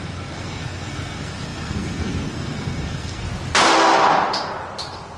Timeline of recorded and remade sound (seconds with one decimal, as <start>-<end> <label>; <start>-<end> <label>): 0.0-3.3 remade; 3.3-5.2 recorded